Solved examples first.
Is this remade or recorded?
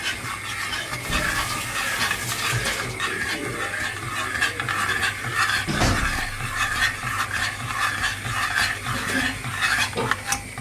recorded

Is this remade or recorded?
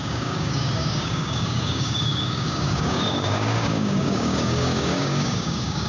remade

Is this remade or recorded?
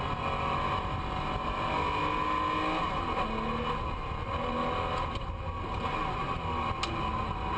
recorded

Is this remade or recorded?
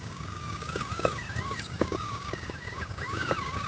remade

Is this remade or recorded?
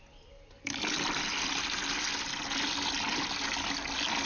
recorded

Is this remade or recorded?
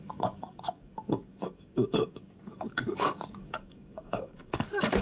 remade